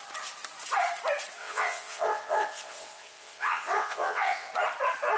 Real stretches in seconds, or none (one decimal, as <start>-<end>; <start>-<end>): 0.0-1.4; 4.5-5.2